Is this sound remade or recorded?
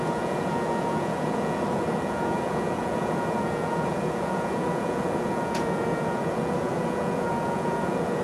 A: remade